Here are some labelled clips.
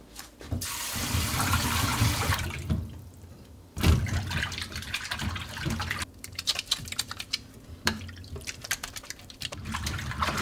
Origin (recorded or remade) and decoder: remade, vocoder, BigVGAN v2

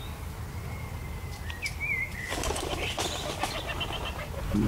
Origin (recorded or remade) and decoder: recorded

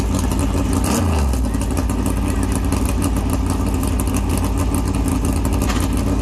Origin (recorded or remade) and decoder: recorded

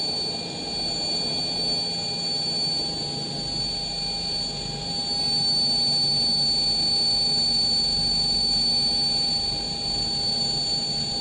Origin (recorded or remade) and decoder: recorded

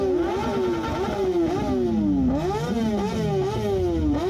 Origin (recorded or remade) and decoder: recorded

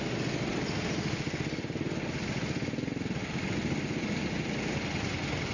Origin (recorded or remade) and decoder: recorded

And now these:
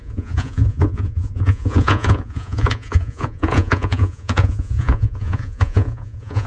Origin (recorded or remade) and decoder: remade, vocoder, Vocos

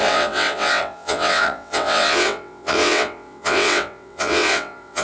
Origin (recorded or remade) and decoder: remade, vocoder, WaveNeXt